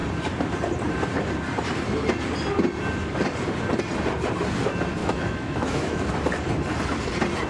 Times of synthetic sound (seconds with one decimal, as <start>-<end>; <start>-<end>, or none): 5.0-6.1